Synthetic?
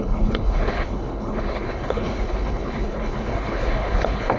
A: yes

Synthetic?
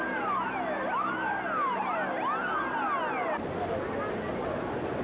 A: no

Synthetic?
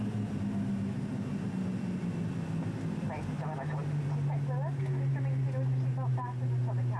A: no